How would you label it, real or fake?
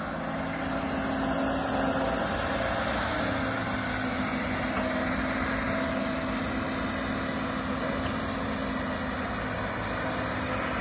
real